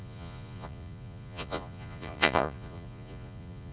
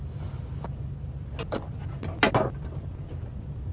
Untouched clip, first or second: second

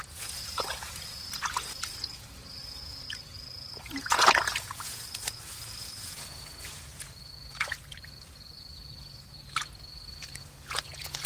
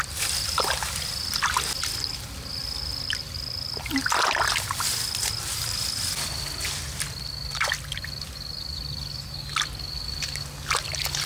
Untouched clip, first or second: second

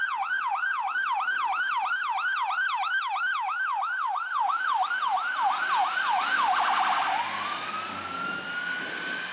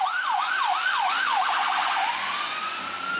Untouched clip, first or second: first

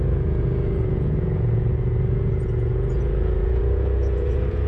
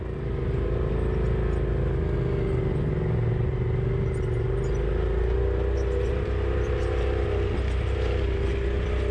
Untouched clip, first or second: second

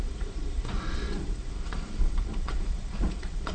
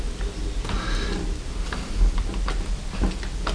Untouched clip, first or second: second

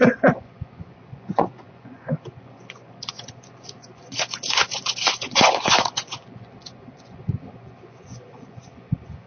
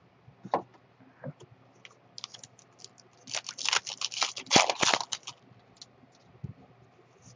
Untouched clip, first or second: second